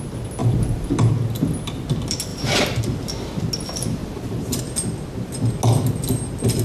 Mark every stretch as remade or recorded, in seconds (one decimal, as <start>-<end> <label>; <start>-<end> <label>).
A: 0.0-0.4 recorded; 0.4-0.9 remade; 0.9-2.3 recorded; 2.3-2.8 remade; 2.8-4.0 recorded; 4.0-4.6 remade; 4.6-6.6 recorded

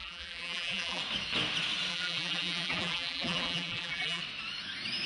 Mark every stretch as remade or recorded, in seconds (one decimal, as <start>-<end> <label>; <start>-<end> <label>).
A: 0.0-1.0 remade; 1.0-1.9 recorded; 1.9-4.2 remade; 4.2-5.1 recorded

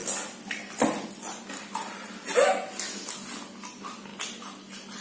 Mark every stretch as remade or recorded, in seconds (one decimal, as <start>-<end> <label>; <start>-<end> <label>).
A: 0.0-2.5 remade; 2.5-4.1 recorded; 4.1-5.0 remade

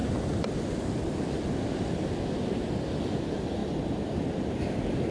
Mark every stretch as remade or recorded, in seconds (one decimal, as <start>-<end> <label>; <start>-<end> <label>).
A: 0.0-0.7 remade; 0.7-3.6 recorded; 3.6-4.2 remade; 4.2-5.1 recorded

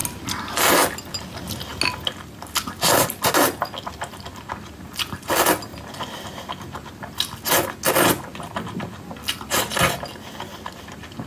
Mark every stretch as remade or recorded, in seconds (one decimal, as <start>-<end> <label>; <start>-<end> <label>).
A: 0.0-11.3 recorded

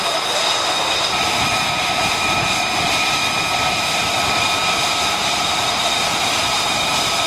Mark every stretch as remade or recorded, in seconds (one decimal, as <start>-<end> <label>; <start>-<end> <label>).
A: 0.0-3.2 remade; 3.2-5.1 recorded; 5.1-7.3 remade

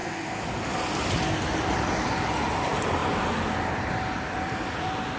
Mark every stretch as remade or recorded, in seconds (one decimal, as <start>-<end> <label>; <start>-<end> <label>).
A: 0.0-1.9 recorded; 1.9-3.0 remade; 3.0-4.3 recorded; 4.3-5.2 remade

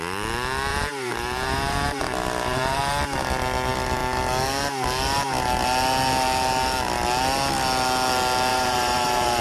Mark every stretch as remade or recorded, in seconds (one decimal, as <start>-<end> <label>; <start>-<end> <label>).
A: 0.0-0.7 recorded; 0.7-2.8 remade; 2.8-8.5 recorded; 8.5-9.4 remade